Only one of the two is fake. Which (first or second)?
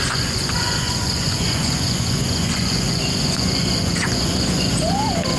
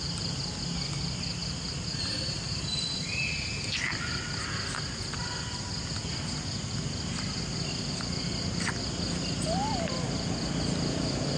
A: first